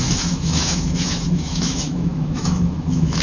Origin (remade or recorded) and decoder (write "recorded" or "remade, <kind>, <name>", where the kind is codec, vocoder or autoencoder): remade, autoencoder, DAC-VAE